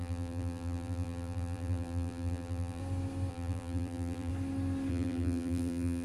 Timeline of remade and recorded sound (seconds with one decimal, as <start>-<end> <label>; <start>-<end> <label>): 0.0-2.8 remade; 2.8-3.3 recorded; 3.3-4.3 remade; 4.3-4.9 recorded; 4.9-6.0 remade